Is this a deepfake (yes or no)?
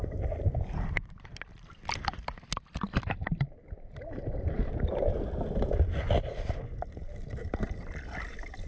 no